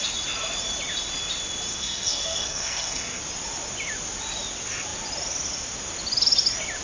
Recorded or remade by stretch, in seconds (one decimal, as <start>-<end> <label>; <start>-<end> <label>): 0.0-1.7 recorded; 1.7-3.2 remade; 3.2-6.8 recorded